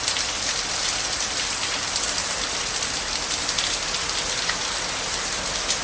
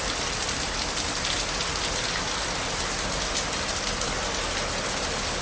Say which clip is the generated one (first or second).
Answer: first